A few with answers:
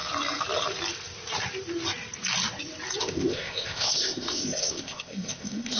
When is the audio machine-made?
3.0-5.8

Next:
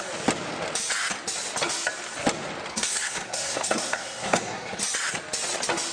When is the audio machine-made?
2.7-4.8

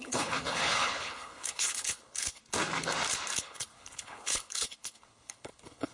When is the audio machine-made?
0.0-2.4; 3.4-5.9

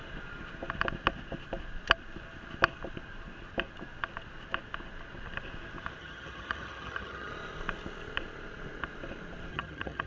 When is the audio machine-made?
6.0-7.3; 9.5-10.1